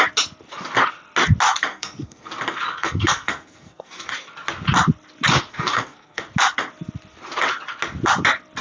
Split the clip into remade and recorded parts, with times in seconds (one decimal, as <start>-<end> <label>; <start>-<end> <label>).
0.0-1.7 recorded; 1.7-2.3 remade; 2.3-2.7 recorded; 2.7-4.1 remade; 4.1-5.5 recorded; 5.5-6.2 remade; 6.2-8.6 recorded